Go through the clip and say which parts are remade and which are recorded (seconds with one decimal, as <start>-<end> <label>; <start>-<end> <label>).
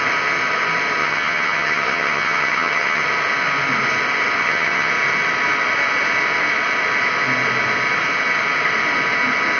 0.0-1.0 recorded; 1.0-3.0 remade; 3.0-4.4 recorded; 4.4-4.9 remade; 4.9-9.6 recorded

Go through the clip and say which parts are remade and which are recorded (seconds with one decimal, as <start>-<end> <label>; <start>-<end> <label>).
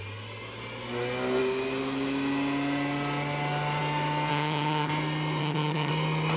0.0-4.3 recorded; 4.3-4.9 remade; 4.9-5.4 recorded; 5.4-5.9 remade; 5.9-6.4 recorded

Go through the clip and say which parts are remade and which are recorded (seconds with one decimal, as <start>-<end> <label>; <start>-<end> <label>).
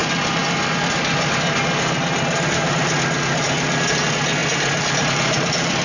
0.0-5.8 recorded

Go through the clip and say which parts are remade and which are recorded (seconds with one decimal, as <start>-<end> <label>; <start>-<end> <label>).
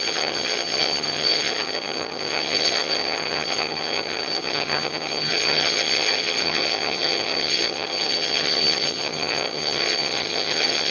0.0-10.9 remade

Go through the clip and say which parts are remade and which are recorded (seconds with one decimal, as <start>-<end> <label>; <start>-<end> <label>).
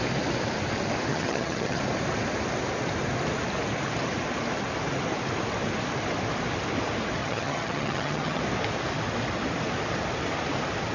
0.0-1.1 recorded; 1.1-1.8 remade; 1.8-7.2 recorded; 7.2-8.4 remade; 8.4-10.9 recorded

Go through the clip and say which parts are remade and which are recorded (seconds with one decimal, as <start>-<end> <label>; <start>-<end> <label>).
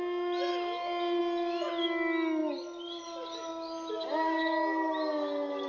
0.0-5.7 recorded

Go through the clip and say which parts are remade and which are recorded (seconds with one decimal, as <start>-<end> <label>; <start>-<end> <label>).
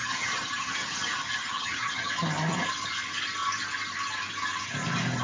0.0-2.1 remade; 2.1-5.2 recorded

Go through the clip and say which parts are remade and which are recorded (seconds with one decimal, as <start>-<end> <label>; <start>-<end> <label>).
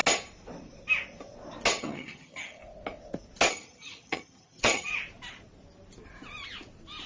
0.0-1.8 recorded; 1.8-2.6 remade; 2.6-3.5 recorded; 3.5-4.9 remade; 4.9-7.1 recorded